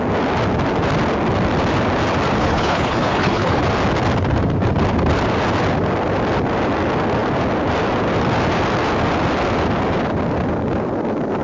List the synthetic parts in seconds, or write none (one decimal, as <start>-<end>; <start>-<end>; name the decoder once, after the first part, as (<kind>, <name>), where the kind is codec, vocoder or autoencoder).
2.4-3.6 (codec, HILCodec)